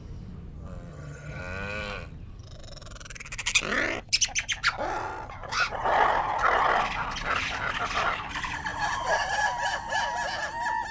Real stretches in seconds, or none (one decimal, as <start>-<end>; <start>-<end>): 0.0-0.9; 1.4-10.9